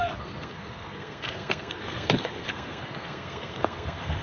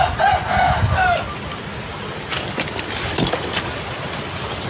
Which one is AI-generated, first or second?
first